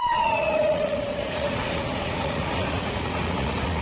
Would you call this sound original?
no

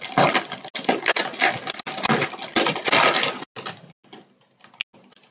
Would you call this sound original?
yes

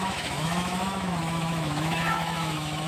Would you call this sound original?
no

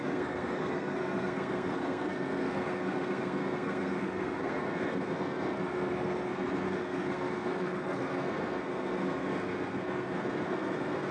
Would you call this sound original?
no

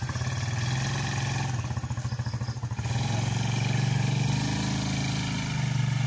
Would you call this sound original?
yes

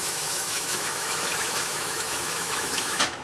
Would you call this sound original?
no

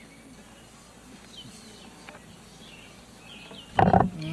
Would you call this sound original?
yes